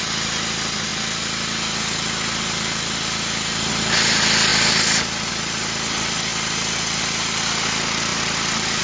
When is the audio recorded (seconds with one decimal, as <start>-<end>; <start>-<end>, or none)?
0.0-4.5; 5.3-8.1

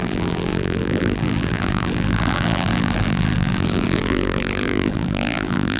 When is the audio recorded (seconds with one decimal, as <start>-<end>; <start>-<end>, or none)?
none

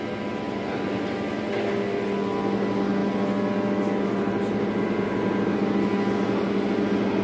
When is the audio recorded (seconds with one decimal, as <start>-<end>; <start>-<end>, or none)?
0.0-7.2

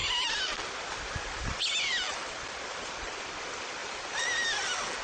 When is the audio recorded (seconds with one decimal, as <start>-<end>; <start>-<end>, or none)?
0.0-3.8; 4.4-5.0